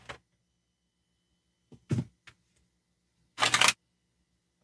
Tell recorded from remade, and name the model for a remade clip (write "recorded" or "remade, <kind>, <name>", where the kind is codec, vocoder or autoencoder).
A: recorded